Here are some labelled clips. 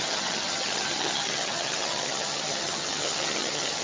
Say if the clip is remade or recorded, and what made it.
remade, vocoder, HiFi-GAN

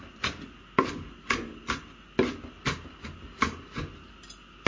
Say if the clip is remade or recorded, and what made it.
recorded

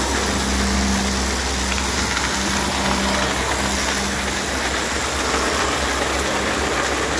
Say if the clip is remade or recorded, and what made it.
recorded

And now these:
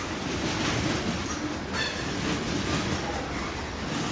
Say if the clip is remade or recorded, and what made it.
recorded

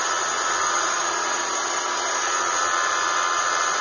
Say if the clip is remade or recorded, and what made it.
recorded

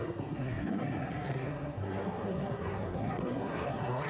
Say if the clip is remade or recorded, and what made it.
remade, codec, SNAC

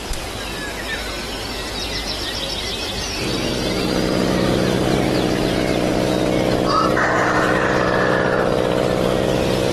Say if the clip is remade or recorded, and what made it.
recorded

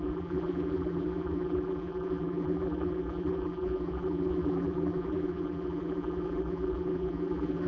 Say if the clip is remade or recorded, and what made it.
remade, vocoder, BigVGAN v2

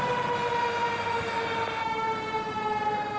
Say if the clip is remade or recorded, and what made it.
recorded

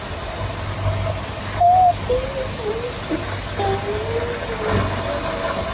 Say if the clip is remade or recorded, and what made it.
recorded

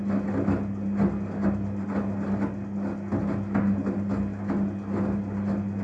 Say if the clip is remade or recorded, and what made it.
recorded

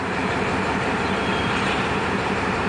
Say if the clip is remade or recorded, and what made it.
remade, vocoder, BigVGAN v2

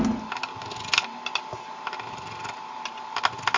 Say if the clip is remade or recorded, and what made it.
recorded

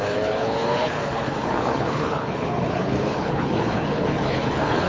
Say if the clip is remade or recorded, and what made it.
remade, codec, HILCodec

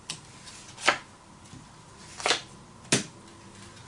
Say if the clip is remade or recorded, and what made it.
recorded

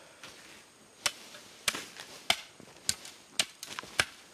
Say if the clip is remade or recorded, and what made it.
recorded